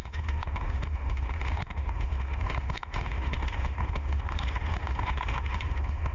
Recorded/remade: remade